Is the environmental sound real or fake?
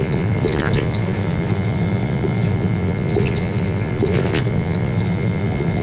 fake